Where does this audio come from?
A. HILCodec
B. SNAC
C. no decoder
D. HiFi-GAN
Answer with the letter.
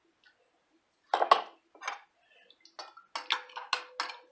C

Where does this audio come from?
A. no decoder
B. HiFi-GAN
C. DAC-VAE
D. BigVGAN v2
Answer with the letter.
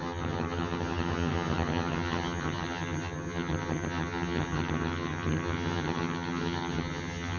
B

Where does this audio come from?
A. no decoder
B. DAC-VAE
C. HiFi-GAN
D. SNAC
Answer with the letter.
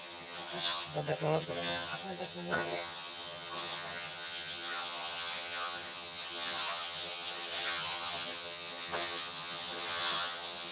C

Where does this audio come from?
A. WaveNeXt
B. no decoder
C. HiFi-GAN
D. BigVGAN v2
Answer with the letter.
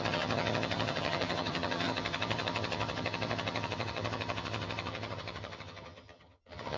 C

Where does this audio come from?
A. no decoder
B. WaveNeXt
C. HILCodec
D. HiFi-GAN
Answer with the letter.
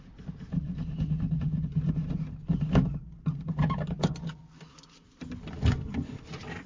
A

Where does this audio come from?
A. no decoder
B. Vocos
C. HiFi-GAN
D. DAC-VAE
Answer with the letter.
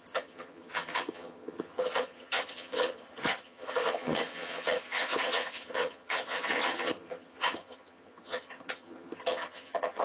C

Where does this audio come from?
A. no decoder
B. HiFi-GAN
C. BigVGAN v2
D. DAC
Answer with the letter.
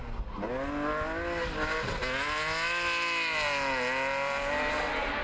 A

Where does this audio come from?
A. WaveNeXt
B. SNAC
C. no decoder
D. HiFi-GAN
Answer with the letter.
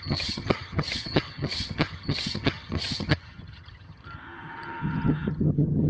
D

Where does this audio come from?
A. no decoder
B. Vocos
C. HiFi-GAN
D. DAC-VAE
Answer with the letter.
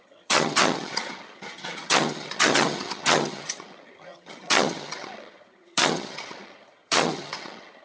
C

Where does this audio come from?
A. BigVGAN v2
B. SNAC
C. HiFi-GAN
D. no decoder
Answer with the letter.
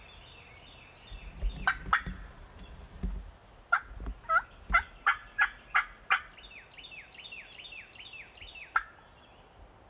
D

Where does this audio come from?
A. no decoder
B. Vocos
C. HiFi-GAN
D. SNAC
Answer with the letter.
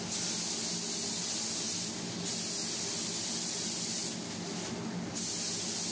A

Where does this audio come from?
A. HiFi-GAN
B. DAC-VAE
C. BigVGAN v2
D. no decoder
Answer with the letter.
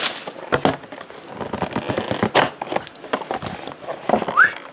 D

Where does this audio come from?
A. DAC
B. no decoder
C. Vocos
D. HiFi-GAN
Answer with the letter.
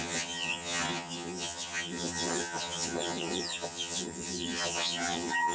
D